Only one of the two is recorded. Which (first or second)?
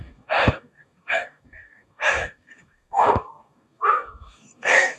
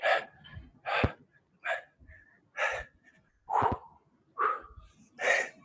second